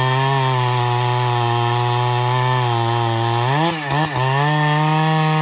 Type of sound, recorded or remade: recorded